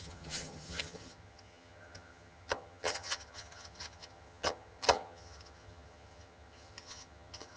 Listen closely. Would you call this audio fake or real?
fake